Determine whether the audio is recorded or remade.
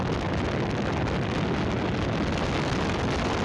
recorded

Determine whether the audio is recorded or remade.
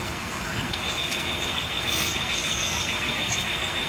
remade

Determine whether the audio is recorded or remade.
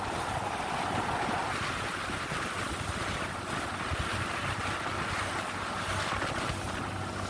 recorded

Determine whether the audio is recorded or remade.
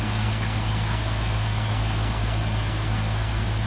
remade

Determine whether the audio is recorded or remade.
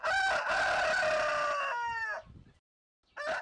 recorded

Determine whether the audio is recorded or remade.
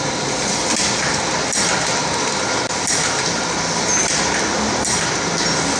recorded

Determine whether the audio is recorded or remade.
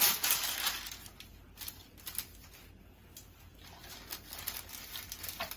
recorded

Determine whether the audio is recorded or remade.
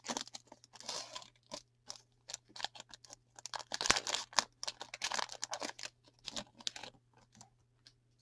recorded